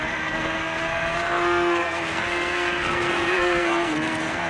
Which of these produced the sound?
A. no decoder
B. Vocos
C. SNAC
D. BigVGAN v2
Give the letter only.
C